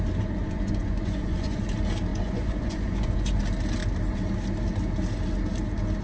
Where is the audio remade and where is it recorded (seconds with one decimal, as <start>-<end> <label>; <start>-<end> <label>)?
0.0-0.4 recorded; 0.4-1.6 remade; 1.6-2.1 recorded; 2.1-3.4 remade; 3.4-6.0 recorded